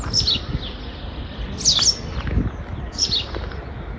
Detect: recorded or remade recorded